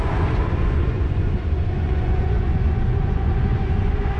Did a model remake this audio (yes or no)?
yes